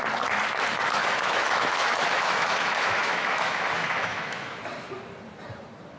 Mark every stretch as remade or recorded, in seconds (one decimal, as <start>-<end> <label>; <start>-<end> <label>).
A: 0.0-1.0 recorded; 1.0-4.6 remade; 4.6-6.0 recorded